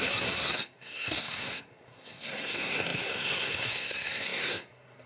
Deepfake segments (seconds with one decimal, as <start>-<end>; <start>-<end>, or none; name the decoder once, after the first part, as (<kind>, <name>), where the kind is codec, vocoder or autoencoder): 0.0-5.1 (codec, SNAC)